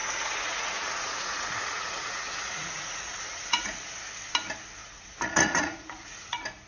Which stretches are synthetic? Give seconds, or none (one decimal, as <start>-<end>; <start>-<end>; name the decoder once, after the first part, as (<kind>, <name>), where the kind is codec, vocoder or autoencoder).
0.0-4.0 (vocoder, Vocos); 4.8-6.7